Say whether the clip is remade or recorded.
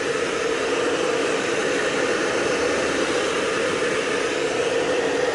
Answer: remade